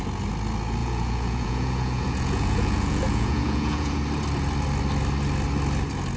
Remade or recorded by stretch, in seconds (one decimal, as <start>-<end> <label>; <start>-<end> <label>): 0.0-0.8 recorded; 0.8-4.0 remade; 4.0-6.2 recorded